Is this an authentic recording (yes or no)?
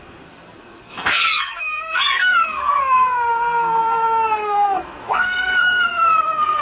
no